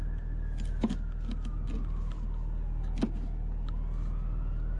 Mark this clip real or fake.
real